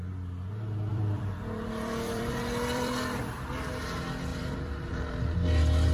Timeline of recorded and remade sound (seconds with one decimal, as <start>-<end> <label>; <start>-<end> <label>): 0.0-0.9 recorded; 0.9-3.5 remade; 3.5-4.3 recorded; 4.3-5.2 remade; 5.2-5.9 recorded